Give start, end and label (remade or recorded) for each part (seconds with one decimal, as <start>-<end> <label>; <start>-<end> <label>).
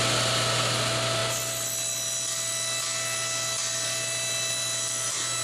0.0-5.4 recorded